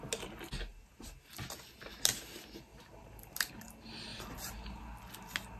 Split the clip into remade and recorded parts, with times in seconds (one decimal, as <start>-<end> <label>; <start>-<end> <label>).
0.0-0.7 recorded; 0.7-1.3 remade; 1.3-2.7 recorded; 2.7-3.5 remade; 3.5-4.1 recorded; 4.1-4.8 remade; 4.8-5.6 recorded